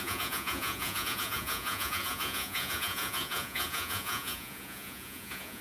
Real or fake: fake